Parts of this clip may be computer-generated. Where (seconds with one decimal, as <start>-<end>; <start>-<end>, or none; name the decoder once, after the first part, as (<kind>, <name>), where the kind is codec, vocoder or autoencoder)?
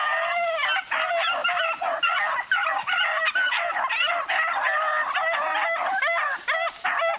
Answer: none